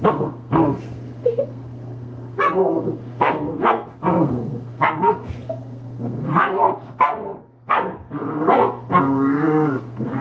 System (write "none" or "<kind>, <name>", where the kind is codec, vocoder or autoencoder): codec, SNAC